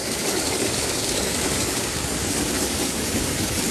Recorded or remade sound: remade